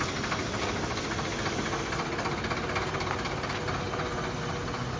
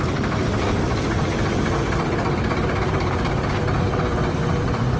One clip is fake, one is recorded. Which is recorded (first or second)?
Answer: first